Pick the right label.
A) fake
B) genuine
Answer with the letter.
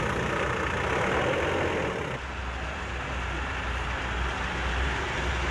B